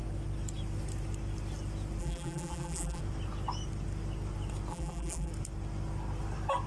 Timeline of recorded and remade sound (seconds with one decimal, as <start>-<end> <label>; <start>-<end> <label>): 0.0-2.0 recorded; 2.0-3.0 remade; 3.0-4.7 recorded; 4.7-5.3 remade; 5.3-6.7 recorded